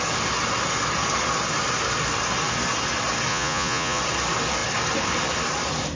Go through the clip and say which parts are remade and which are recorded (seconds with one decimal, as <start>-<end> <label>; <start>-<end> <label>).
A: 0.0-3.3 recorded; 3.3-4.0 remade; 4.0-5.9 recorded